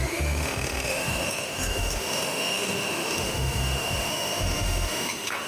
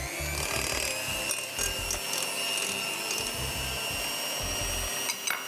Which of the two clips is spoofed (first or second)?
first